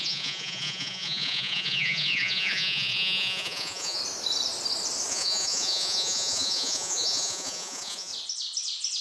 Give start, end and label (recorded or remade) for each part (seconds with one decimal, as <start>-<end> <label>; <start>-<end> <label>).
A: 0.0-4.0 remade; 4.0-5.1 recorded; 5.1-8.1 remade; 8.1-9.0 recorded